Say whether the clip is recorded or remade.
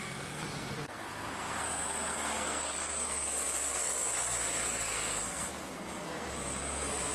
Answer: remade